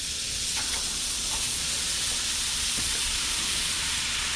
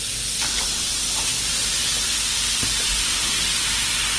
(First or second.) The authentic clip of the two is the second